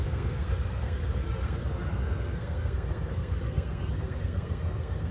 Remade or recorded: remade